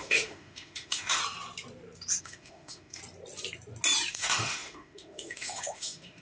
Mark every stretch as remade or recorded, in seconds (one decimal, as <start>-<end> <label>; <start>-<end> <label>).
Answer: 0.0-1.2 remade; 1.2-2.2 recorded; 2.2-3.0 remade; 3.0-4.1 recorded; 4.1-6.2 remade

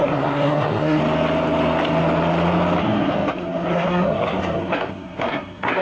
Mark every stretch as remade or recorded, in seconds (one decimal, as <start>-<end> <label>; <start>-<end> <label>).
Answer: 0.0-1.0 remade; 1.0-2.8 recorded; 2.8-5.8 remade

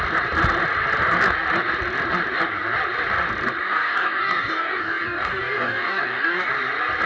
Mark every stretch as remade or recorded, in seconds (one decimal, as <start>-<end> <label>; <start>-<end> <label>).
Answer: 0.0-3.6 recorded; 3.6-6.5 remade; 6.5-7.1 recorded

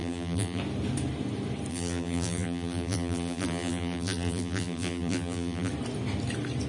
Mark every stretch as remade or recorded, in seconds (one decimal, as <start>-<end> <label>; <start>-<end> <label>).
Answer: 0.0-0.6 remade; 0.6-1.7 recorded; 1.7-5.7 remade; 5.7-6.7 recorded